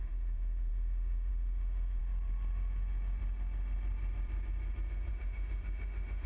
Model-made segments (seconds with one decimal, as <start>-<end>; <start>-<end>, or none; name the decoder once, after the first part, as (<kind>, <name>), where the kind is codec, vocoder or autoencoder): 0.0-2.0 (autoencoder, DAC-VAE); 5.1-6.3